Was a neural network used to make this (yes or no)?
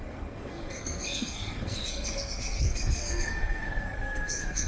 yes